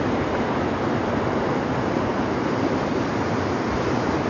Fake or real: fake